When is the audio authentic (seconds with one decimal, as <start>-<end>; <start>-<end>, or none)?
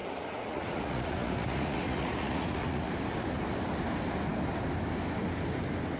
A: 2.9-6.0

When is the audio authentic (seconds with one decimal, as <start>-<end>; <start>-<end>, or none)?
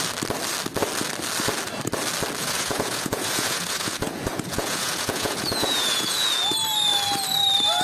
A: 0.0-2.4; 6.3-7.8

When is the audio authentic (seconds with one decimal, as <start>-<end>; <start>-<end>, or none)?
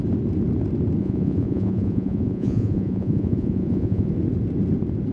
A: 0.0-1.0; 4.1-5.1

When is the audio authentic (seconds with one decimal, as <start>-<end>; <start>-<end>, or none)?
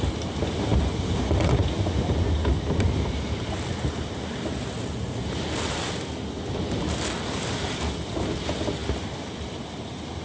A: 0.0-10.2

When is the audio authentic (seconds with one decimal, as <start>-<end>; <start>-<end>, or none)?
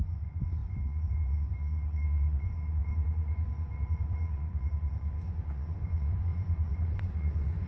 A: none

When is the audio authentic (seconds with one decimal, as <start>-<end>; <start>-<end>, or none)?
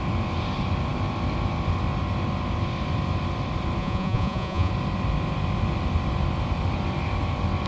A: 0.0-3.8; 4.7-7.7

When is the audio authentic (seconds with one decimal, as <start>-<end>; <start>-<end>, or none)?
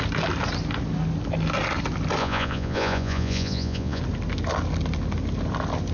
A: 0.0-2.2; 4.0-5.9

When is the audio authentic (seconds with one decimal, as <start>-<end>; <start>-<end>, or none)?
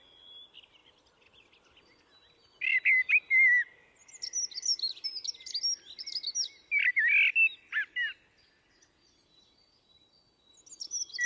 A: 0.0-11.3